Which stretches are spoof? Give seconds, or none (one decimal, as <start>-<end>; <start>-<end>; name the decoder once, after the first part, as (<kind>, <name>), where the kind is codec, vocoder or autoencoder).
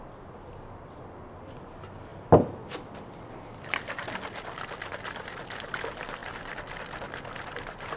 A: none